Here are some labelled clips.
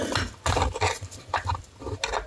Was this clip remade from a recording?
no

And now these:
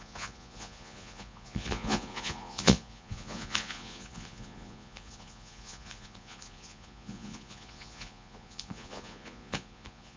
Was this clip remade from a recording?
yes